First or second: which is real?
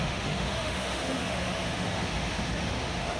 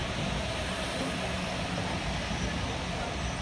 second